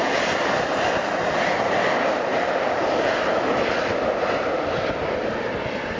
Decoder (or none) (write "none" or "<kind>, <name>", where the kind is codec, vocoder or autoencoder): none